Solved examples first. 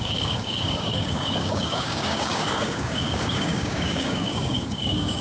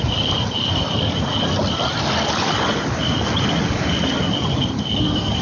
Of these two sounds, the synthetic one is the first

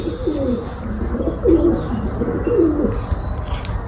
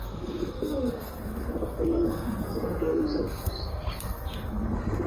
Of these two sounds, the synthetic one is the second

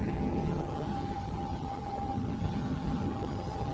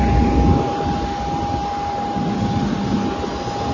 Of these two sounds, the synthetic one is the first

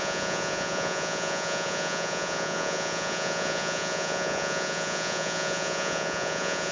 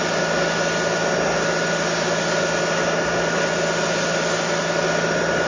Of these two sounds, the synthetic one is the first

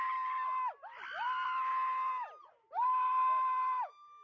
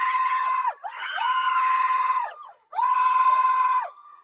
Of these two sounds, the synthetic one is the second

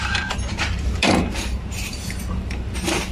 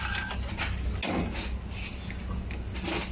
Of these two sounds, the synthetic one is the first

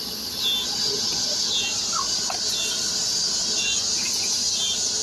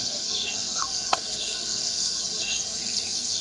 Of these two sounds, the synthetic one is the second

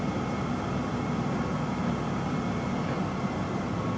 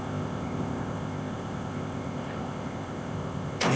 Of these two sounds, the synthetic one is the second